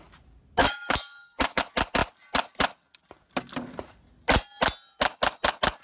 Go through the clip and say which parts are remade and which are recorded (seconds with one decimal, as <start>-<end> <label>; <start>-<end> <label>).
0.0-0.6 recorded; 0.6-1.6 remade; 1.6-5.8 recorded